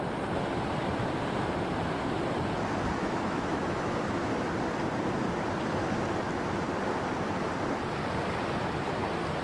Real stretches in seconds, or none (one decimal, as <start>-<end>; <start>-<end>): 0.0-3.0; 4.3-9.4